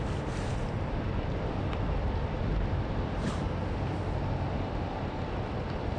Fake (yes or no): no